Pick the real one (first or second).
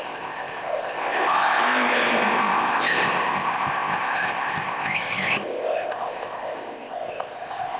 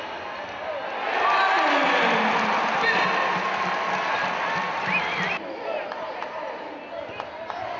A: second